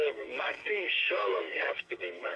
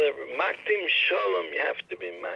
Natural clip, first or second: second